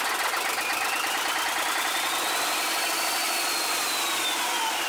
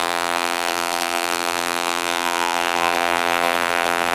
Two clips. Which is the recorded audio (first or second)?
first